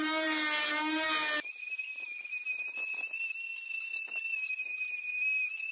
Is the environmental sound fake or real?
real